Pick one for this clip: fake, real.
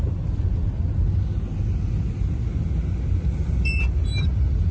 real